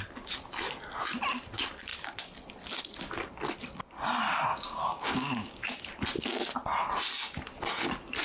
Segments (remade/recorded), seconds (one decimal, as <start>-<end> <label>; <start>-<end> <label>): 0.0-4.5 recorded; 4.5-5.9 remade; 5.9-8.2 recorded